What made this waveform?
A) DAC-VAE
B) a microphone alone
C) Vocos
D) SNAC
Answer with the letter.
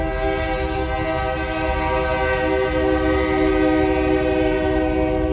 B